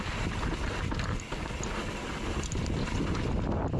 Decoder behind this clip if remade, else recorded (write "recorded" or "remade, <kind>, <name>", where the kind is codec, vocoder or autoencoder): recorded